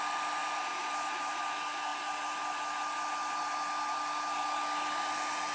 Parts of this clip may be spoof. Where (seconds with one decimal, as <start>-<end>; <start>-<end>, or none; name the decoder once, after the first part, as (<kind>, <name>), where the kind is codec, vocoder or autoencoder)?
0.4-1.4 (vocoder, BigVGAN v2)